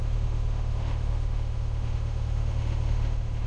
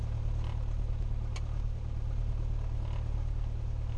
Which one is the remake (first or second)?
first